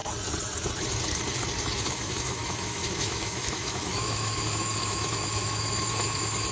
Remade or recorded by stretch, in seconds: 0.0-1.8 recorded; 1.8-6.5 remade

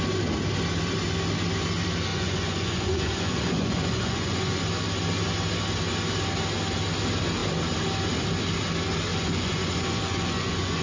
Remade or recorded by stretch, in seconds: 0.0-2.1 recorded; 2.1-4.6 remade; 4.6-9.1 recorded; 9.1-10.8 remade

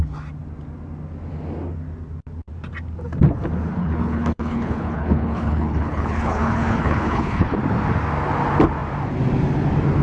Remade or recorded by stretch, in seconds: 0.0-3.8 recorded; 3.8-7.6 remade; 7.6-10.0 recorded

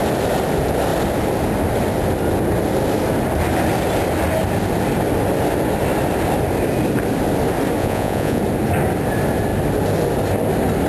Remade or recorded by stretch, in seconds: 0.0-7.8 recorded; 7.8-8.4 remade; 8.4-10.9 recorded

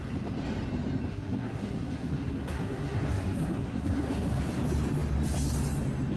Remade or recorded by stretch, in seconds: 0.0-1.1 recorded; 1.1-4.4 remade; 4.4-6.2 recorded

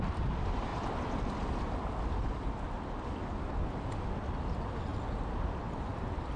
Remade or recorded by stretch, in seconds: 0.0-6.4 recorded

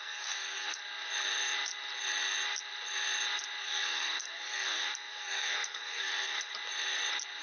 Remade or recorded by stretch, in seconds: 0.0-0.8 remade; 0.8-3.6 recorded; 3.6-6.5 remade; 6.5-7.4 recorded